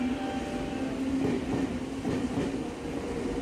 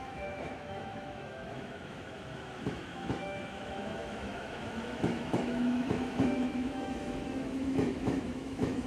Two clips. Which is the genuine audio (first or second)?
first